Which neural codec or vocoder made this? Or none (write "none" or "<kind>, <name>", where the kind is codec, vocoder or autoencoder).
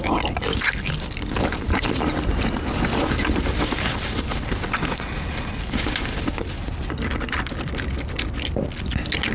none